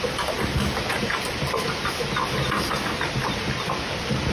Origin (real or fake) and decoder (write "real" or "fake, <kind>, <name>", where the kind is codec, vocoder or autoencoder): real